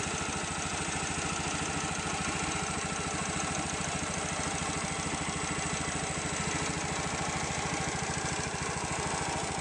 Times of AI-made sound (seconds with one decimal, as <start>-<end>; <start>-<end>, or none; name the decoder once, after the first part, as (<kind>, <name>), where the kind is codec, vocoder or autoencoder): 0.7-1.3 (vocoder, BigVGAN v2)